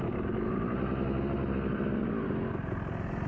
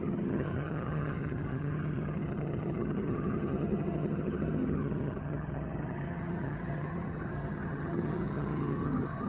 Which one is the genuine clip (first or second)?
first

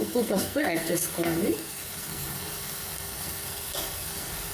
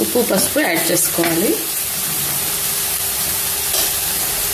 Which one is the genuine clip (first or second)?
second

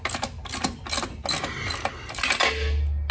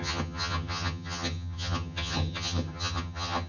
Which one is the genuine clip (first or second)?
first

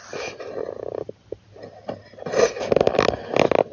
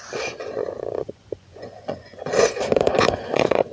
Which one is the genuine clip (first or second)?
first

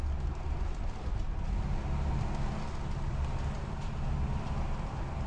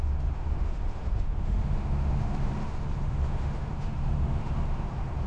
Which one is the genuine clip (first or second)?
first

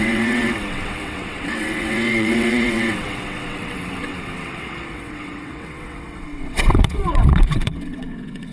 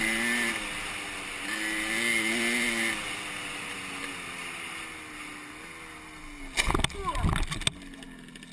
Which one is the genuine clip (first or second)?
second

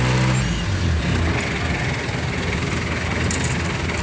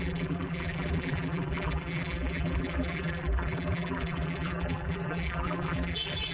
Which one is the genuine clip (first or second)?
first